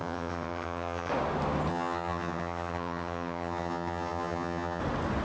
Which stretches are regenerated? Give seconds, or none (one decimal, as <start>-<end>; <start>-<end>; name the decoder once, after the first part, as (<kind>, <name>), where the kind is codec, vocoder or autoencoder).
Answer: 0.0-1.1 (vocoder, HiFi-GAN); 1.7-4.8